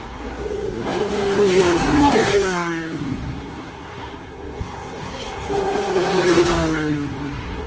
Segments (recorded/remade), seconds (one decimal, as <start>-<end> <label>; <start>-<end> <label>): 0.0-7.7 remade